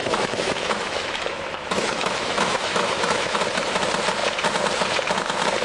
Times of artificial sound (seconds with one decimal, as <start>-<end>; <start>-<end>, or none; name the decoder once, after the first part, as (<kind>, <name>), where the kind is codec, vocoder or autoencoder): 0.0-3.4 (autoencoder, DAC-VAE)